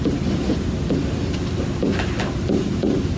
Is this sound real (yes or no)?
yes